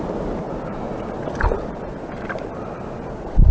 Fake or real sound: real